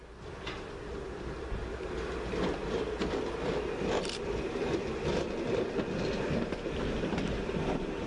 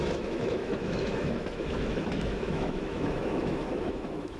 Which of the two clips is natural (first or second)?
first